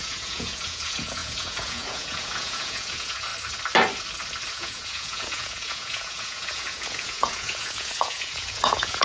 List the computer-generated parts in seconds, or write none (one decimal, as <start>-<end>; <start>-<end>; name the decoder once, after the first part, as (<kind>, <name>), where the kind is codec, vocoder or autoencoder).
0.0-3.3 (vocoder, Vocos); 4.5-9.0